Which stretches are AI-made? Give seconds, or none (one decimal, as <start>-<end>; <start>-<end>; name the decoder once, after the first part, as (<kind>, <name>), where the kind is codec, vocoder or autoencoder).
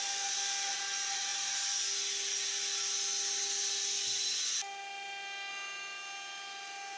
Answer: none